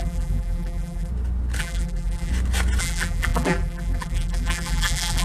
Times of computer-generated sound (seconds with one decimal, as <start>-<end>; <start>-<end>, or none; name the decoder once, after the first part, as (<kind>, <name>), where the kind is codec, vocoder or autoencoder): 0.0-1.1 (vocoder, BigVGAN v2); 1.6-2.3; 2.8-5.2